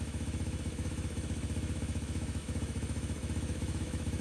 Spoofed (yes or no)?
yes